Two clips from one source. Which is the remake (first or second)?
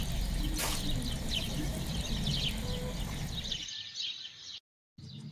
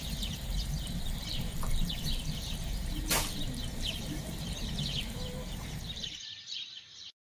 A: second